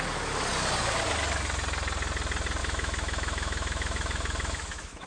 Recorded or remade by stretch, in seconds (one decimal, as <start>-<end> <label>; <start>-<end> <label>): 0.0-2.6 recorded; 2.6-5.1 remade